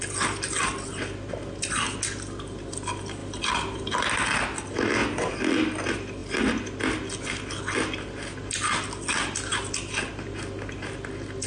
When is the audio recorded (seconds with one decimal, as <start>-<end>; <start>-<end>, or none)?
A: 0.0-11.5